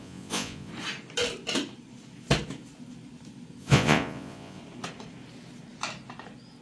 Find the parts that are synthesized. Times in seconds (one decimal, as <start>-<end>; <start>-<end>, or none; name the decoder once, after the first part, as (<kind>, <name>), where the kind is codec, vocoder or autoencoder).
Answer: 0.0-0.7 (vocoder, Vocos); 3.6-4.6